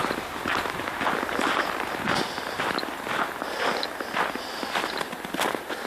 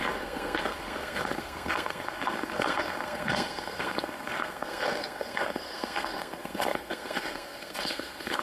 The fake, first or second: second